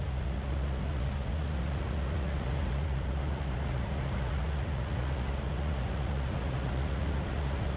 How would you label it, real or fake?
fake